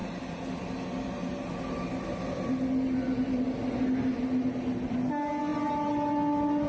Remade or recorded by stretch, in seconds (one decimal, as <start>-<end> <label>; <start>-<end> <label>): 0.0-6.7 recorded